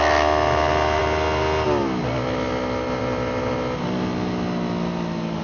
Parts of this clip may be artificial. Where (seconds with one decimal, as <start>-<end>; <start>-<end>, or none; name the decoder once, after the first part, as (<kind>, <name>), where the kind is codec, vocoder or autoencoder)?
none